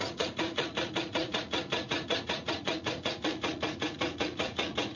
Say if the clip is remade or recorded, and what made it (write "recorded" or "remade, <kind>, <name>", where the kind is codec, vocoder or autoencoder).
remade, vocoder, Vocos